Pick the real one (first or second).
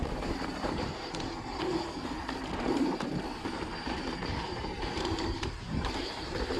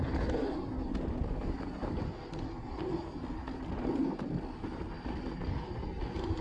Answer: second